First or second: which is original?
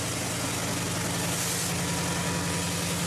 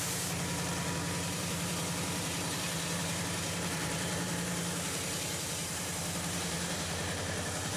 first